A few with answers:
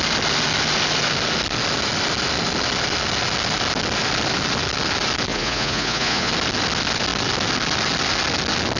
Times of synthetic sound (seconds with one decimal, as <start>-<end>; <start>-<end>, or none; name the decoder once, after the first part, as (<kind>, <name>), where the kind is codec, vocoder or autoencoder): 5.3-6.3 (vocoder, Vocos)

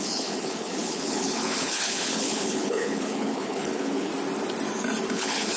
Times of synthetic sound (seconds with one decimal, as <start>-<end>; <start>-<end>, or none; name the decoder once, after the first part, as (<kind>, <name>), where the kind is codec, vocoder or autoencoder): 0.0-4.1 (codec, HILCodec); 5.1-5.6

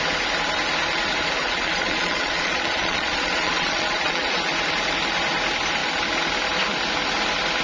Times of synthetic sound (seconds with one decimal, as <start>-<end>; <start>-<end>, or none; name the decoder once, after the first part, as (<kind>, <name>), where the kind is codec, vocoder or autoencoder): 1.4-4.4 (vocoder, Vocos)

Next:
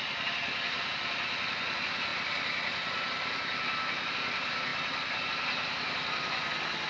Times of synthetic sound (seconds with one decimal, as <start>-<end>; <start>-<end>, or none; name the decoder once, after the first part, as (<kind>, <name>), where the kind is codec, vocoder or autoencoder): none

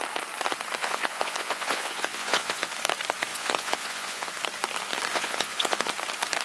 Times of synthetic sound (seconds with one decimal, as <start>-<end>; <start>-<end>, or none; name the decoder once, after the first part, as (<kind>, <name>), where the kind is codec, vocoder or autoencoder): 0.8-2.7 (vocoder, Vocos); 3.3-4.3; 5.1-5.9